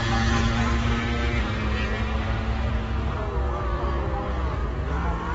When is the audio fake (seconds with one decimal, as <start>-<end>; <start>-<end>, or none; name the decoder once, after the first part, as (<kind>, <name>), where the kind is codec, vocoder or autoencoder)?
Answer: none

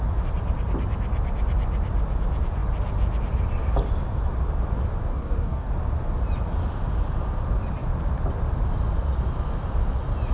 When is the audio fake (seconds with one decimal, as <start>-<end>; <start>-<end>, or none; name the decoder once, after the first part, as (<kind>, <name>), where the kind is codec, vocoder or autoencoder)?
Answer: 5.1-5.7 (codec, DAC)

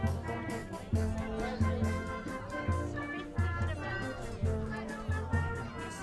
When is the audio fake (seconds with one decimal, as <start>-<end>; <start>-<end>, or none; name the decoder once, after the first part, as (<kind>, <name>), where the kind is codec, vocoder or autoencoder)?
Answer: none

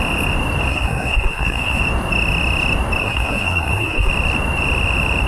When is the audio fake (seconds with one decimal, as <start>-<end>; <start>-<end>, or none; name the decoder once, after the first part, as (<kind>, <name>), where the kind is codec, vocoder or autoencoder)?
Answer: 0.7-1.8 (codec, SNAC); 3.0-4.1

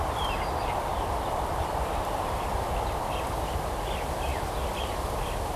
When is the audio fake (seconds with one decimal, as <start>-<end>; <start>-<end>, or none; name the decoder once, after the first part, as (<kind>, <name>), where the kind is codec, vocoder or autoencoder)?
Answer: 0.9-3.6 (vocoder, BigVGAN v2)

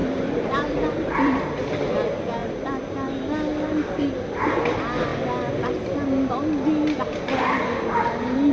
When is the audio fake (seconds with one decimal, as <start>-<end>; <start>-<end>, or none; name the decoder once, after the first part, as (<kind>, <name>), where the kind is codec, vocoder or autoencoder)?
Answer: 0.0-1.4 (vocoder, BigVGAN v2)

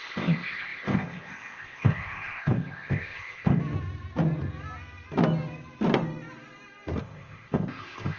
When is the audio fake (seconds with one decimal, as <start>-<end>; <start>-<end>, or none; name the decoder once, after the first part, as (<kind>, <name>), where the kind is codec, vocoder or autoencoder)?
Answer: 0.0-3.6 (codec, ZipCodec); 7.0-8.2

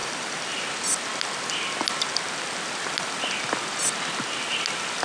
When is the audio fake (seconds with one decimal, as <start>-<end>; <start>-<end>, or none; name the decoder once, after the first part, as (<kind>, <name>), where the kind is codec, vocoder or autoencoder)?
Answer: 0.0-0.7 (vocoder, BigVGAN v2)